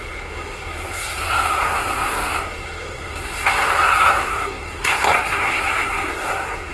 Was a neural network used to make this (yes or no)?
yes